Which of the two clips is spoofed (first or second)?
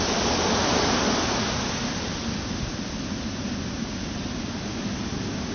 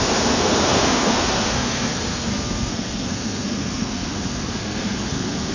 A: second